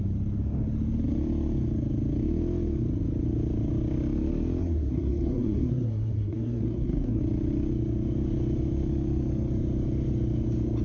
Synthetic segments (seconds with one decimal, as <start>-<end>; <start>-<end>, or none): 4.6-7.2